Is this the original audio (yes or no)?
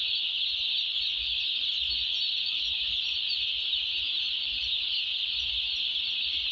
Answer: no